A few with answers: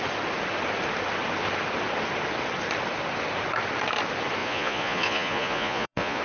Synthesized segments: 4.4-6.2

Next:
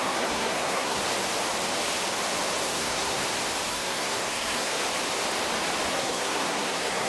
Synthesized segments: 0.0-1.0; 2.6-3.2; 3.7-4.8; 5.9-7.1

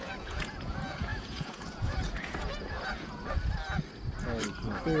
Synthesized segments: 0.0-3.4

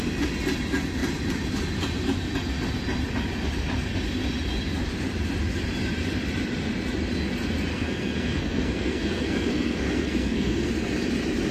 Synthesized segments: 7.7-10.7